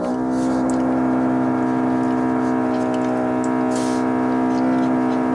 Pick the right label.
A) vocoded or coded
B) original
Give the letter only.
B